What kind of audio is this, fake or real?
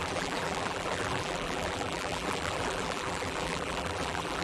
fake